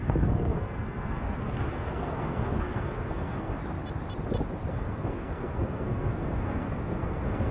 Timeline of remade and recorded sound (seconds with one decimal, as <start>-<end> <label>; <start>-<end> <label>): 0.0-3.6 remade; 3.6-4.7 recorded; 4.7-7.5 remade